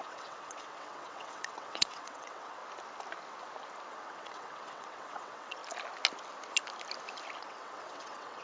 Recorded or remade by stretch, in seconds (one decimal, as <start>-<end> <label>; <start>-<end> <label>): 0.0-2.6 remade; 2.6-3.9 recorded; 3.9-5.6 remade; 5.6-7.4 recorded; 7.4-8.4 remade